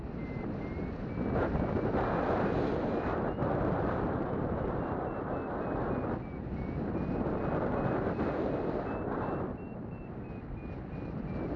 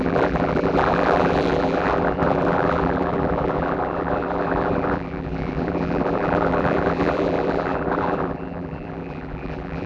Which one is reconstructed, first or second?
second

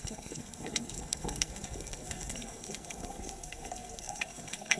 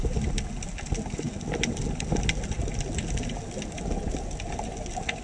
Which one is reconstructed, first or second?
first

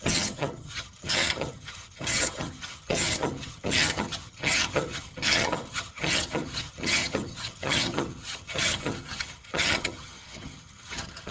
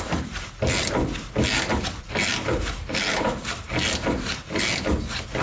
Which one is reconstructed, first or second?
first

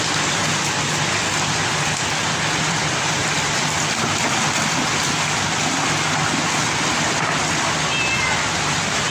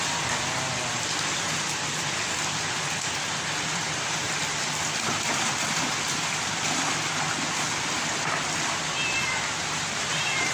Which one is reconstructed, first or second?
second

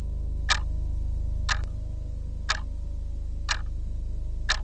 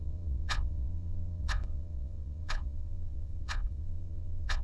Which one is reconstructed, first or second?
second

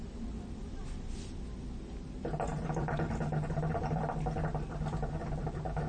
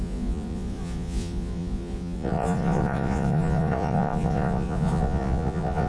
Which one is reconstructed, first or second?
second